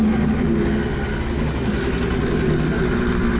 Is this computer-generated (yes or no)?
no